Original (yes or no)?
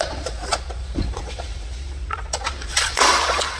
no